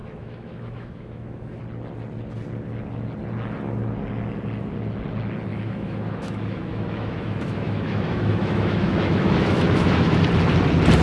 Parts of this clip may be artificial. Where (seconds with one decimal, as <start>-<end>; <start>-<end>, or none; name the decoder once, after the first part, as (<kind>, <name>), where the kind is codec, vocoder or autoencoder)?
0.0-1.6 (autoencoder, DAC-VAE); 5.5-10.2